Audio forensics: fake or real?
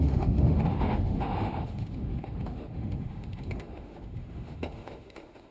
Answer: fake